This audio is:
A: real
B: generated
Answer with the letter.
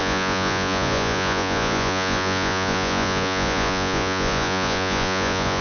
B